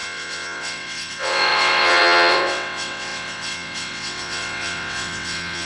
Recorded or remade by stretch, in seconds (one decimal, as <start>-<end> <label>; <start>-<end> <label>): 0.0-5.7 remade